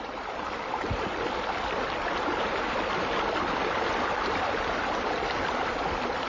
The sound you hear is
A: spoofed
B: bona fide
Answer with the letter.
B